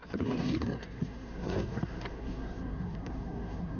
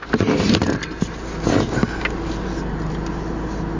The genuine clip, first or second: second